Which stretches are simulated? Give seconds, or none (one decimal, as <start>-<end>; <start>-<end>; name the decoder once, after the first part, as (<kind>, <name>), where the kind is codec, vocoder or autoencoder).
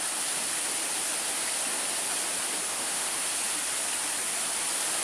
2.7-3.3 (autoencoder, DAC-VAE)